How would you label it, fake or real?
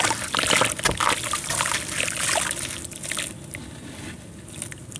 real